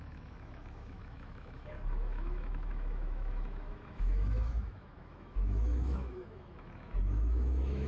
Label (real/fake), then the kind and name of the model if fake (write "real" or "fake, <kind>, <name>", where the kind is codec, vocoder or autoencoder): fake, autoencoder, DAC-VAE